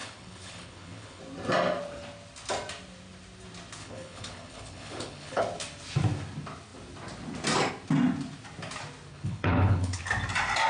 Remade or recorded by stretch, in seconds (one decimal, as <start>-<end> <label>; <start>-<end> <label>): 0.0-1.2 remade; 1.2-3.8 recorded; 3.8-5.4 remade; 5.4-9.1 recorded; 9.1-10.0 remade; 10.0-10.7 recorded